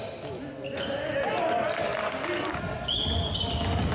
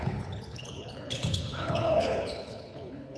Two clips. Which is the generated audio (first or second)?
second